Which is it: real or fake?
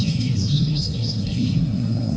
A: fake